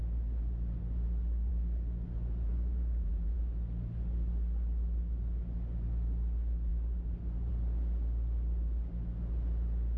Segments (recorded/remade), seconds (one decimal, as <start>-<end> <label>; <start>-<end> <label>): 0.0-2.5 recorded; 2.5-3.4 remade; 3.4-10.0 recorded

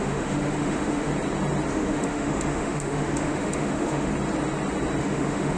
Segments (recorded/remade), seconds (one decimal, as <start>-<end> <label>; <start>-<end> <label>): 0.0-1.1 remade; 1.1-1.7 recorded; 1.7-4.1 remade; 4.1-5.0 recorded; 5.0-5.6 remade

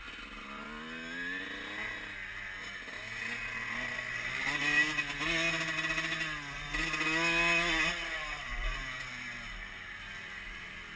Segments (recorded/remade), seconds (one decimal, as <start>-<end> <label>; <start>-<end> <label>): 0.0-11.0 recorded

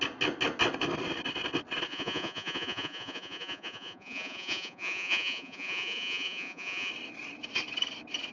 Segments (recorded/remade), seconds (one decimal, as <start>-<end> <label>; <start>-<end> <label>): 0.0-1.9 recorded; 1.9-6.9 remade; 6.9-8.3 recorded

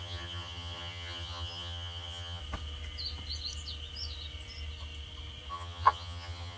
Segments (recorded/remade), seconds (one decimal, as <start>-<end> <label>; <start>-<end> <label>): 0.0-2.4 remade; 2.4-5.5 recorded; 5.5-6.6 remade

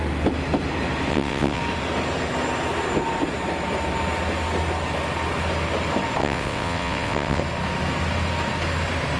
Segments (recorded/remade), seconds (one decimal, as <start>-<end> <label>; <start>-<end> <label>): 0.0-1.1 recorded; 1.1-1.6 remade; 1.6-6.2 recorded; 6.2-7.4 remade; 7.4-9.2 recorded

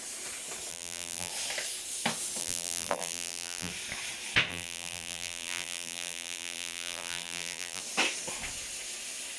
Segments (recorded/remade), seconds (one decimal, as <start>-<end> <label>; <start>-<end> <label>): 0.0-0.7 recorded; 0.7-1.3 remade; 1.3-2.4 recorded; 2.4-3.7 remade; 3.7-4.5 recorded; 4.5-7.8 remade; 7.8-9.4 recorded